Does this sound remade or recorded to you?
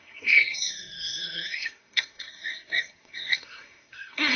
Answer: remade